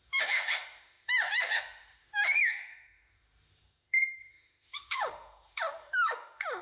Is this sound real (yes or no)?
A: no